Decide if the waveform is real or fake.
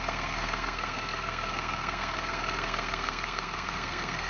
fake